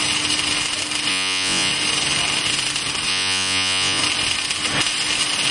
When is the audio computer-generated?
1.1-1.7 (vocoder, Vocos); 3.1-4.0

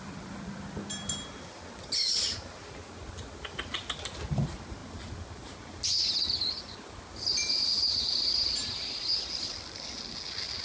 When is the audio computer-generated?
none

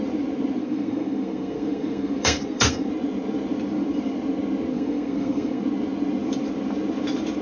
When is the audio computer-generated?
0.6-2.9 (codec, SNAC); 4.7-5.6

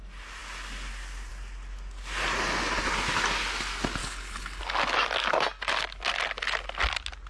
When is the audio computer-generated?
4.0-4.6 (codec, HILCodec)

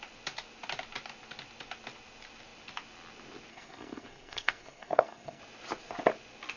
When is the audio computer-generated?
3.5-5.4 (codec, SNAC)

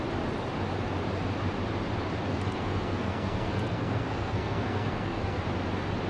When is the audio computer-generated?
2.3-5.4 (codec, SNAC)

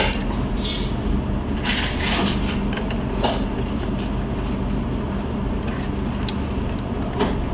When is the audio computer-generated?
none

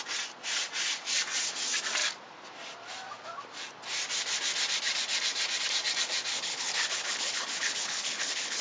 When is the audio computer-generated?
6.3-8.6 (codec, HILCodec)